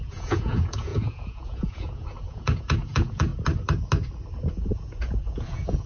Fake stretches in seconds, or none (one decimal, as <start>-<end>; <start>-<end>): 0.0-3.3; 4.5-5.9